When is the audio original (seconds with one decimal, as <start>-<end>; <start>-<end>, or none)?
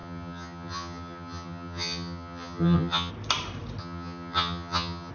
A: 3.1-3.8